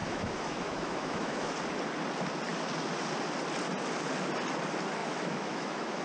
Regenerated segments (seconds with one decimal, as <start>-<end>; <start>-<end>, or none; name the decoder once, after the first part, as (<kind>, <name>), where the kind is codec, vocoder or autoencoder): 0.0-1.5 (autoencoder, DAC-VAE); 5.0-6.0